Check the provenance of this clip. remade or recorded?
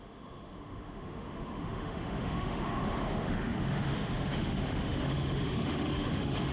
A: remade